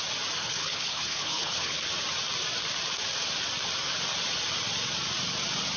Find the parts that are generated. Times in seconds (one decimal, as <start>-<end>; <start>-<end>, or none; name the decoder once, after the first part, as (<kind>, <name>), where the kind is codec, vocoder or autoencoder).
0.4-1.8 (codec, HILCodec)

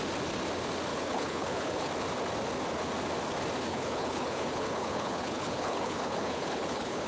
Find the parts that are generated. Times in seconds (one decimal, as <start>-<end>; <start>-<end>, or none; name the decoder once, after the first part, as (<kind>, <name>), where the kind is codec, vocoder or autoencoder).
0.9-1.9 (codec, HILCodec); 3.7-7.1

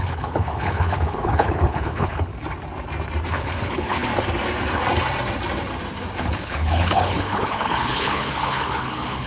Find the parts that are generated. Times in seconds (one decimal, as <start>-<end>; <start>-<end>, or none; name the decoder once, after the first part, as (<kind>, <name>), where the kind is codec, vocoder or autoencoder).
0.0-2.3 (codec, HILCodec); 3.3-4.1; 6.2-9.3

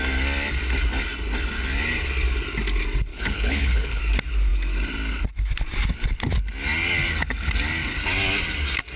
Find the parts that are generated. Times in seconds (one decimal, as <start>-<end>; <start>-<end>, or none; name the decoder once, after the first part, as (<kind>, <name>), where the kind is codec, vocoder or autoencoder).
3.1-4.0 (codec, HILCodec)

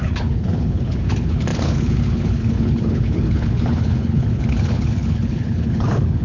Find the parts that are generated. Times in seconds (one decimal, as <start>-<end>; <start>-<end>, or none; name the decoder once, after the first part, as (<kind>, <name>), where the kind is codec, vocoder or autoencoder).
0.0-6.2 (codec, HILCodec)

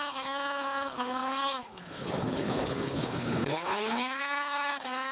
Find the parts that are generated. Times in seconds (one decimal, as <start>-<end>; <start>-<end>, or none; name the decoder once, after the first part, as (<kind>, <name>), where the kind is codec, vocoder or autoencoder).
0.0-5.1 (codec, HILCodec)